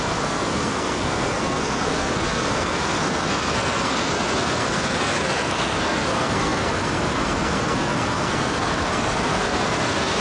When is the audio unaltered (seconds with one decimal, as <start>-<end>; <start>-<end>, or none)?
none